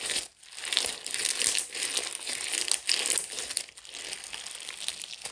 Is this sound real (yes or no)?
yes